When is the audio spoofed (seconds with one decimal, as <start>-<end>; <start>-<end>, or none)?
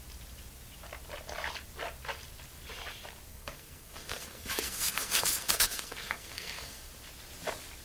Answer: 3.3-6.9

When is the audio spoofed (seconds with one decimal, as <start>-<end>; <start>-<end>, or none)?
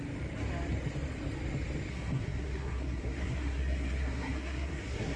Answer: 1.9-5.2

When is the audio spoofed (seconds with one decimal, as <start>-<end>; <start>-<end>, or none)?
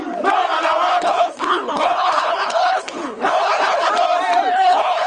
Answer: 0.9-3.9; 4.5-5.1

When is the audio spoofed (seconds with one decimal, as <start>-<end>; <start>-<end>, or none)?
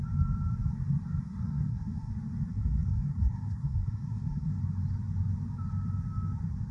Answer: 1.2-2.1; 2.5-4.6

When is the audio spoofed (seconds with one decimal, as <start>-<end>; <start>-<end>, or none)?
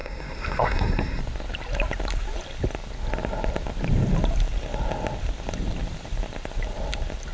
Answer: 0.0-1.2